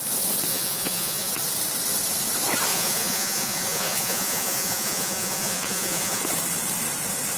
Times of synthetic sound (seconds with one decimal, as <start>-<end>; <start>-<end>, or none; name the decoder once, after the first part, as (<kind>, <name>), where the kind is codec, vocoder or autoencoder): 0.5-1.3 (vocoder, Vocos); 2.7-6.2